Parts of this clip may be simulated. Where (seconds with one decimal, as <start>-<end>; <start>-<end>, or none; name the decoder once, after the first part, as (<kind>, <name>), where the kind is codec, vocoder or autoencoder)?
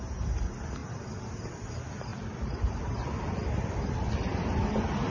none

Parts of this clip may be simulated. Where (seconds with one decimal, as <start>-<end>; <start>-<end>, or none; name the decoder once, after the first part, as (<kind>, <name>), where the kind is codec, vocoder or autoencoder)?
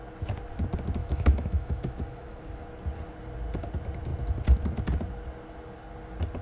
1.0-2.4 (autoencoder, DAC-VAE)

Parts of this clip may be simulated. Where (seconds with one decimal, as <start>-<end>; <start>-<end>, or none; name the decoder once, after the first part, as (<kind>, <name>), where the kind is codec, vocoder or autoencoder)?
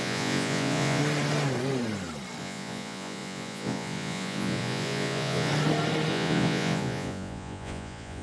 0.0-1.0 (vocoder, Vocos); 2.4-5.5; 6.1-8.2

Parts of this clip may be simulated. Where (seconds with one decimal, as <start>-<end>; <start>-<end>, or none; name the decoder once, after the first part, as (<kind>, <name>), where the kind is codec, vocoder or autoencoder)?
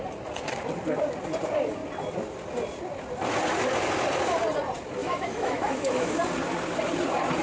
5.0-6.1 (autoencoder, DAC-VAE)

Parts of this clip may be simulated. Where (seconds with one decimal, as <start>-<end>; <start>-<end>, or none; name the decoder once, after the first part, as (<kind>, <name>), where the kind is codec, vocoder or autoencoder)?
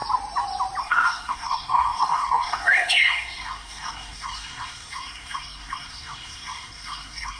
0.8-7.4 (codec, SNAC)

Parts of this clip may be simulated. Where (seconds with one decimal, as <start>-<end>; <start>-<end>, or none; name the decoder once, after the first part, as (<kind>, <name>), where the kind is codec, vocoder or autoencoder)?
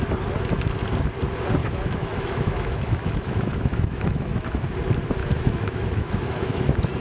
1.6-4.6 (autoencoder, DAC-VAE); 5.2-7.0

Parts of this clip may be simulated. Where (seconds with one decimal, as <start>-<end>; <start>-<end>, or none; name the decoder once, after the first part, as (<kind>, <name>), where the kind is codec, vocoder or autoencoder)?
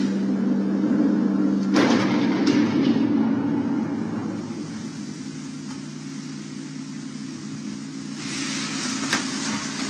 none